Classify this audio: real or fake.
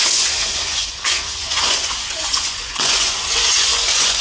fake